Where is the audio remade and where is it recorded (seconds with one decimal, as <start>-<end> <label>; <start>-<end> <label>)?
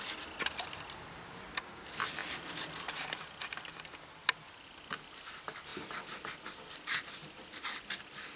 0.0-8.4 recorded